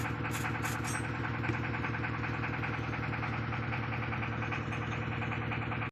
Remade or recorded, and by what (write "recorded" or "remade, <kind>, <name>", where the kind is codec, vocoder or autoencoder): recorded